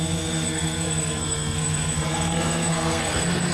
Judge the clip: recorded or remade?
remade